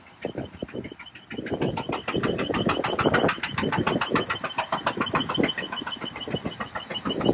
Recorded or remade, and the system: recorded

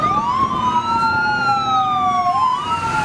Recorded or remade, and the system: recorded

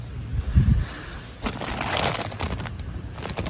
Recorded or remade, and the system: recorded